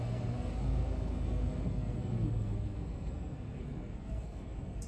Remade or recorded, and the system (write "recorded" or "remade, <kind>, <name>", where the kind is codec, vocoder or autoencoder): remade, codec, SNAC